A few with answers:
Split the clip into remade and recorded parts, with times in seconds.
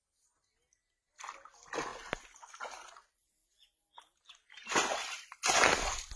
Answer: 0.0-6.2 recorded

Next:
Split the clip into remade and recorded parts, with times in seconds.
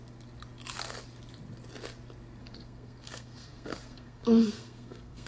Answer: 0.0-2.4 recorded; 2.4-5.3 remade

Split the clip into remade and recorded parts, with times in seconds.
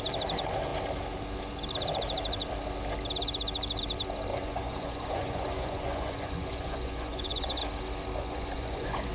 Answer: 0.0-4.3 recorded; 4.3-7.6 remade; 7.6-8.2 recorded; 8.2-9.1 remade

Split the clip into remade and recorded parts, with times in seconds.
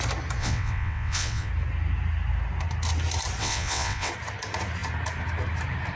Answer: 0.0-0.4 recorded; 0.4-1.5 remade; 1.5-3.4 recorded; 3.4-4.1 remade; 4.1-6.0 recorded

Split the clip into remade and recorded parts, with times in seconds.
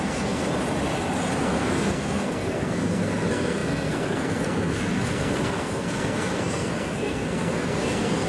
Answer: 0.0-0.4 remade; 0.4-1.4 recorded; 1.4-8.3 remade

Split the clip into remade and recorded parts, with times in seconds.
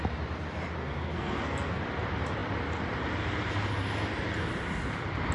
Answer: 0.0-0.8 recorded; 0.8-1.8 remade; 1.8-5.3 recorded